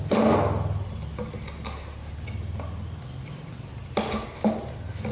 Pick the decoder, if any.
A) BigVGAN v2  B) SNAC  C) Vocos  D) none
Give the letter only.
D